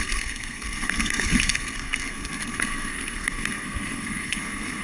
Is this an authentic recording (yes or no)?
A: no